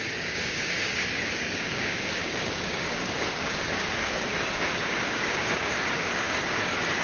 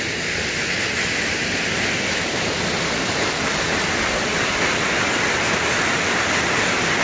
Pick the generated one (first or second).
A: first